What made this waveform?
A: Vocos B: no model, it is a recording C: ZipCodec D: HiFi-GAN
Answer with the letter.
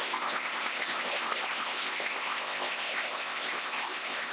C